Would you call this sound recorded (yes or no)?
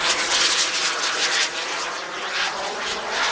yes